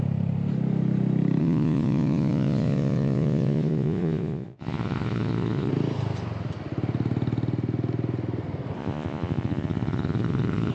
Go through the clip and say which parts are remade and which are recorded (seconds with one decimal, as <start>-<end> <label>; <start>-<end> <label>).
0.0-1.4 recorded; 1.4-5.7 remade; 5.7-8.8 recorded; 8.8-10.7 remade